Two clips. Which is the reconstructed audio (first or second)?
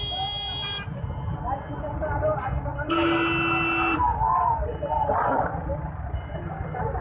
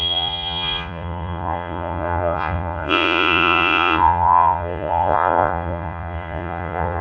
second